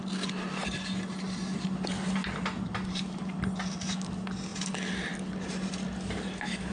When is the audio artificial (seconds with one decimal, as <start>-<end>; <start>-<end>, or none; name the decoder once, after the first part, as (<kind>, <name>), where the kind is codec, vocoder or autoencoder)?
none